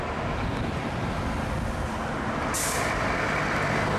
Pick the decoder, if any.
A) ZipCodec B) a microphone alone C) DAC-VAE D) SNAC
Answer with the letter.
B